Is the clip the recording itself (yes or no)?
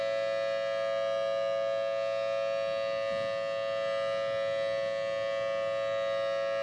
yes